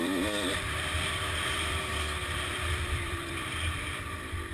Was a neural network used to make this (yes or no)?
yes